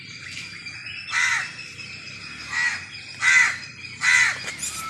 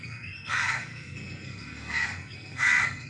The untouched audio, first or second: first